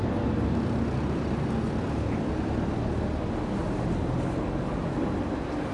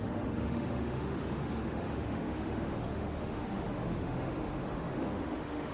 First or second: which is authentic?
first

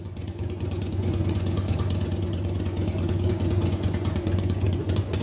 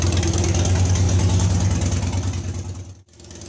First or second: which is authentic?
second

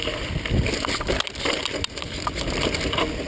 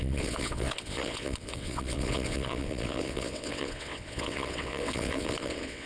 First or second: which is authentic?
first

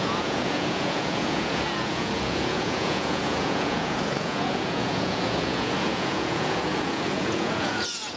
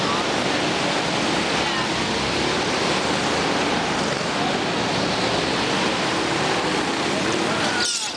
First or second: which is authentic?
second